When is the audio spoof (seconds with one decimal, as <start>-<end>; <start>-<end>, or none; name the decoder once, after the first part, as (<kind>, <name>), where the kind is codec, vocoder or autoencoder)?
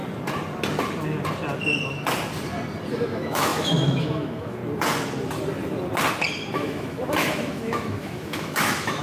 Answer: 2.9-4.6 (autoencoder, DAC-VAE); 6.5-9.0